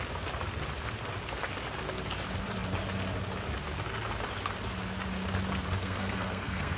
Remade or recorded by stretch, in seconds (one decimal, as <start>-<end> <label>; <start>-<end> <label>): 0.0-5.8 recorded; 5.8-6.8 remade